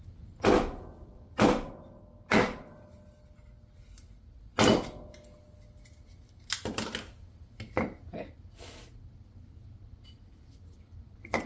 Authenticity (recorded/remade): recorded